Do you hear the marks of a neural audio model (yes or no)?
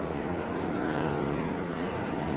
yes